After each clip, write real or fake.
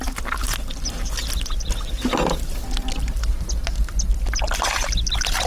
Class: real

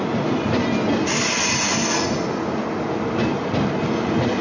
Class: real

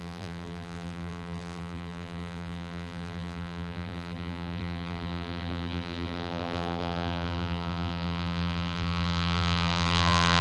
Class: fake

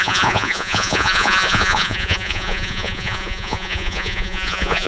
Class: fake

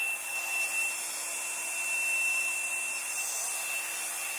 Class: real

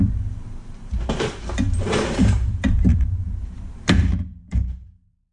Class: fake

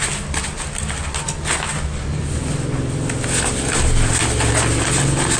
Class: real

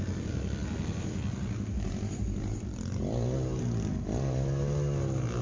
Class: real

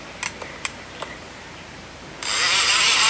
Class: fake